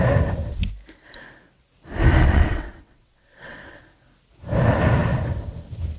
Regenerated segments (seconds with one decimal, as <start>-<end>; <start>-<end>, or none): 2.2-3.8